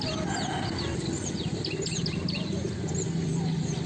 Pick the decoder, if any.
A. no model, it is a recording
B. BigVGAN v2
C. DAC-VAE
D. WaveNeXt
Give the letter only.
A